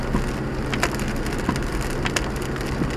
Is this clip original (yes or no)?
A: yes